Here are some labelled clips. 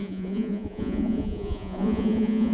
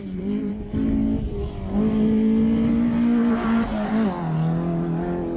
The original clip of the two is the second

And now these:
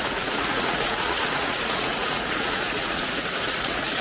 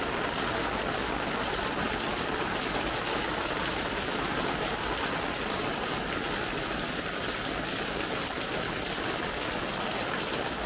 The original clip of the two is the second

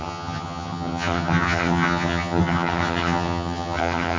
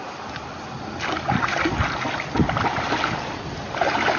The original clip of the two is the second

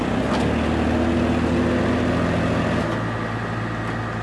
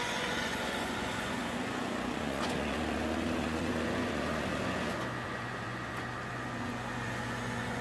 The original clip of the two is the first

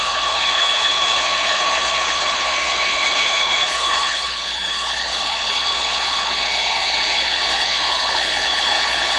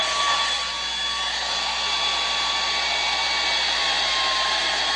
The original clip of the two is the second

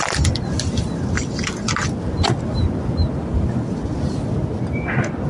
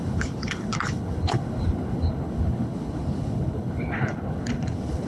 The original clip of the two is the first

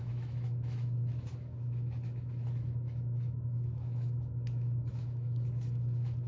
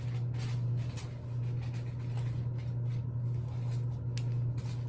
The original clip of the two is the second